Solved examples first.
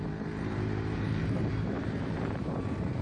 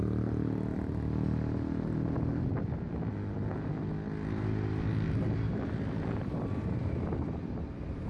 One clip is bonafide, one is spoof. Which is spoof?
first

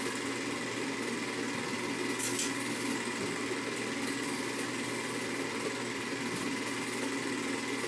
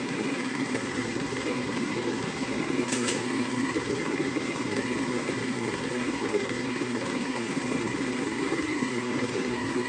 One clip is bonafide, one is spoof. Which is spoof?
second